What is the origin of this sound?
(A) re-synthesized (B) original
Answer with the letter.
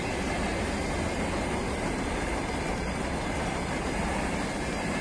B